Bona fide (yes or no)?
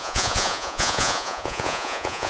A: no